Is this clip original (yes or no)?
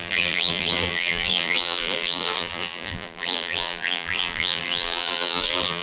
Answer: no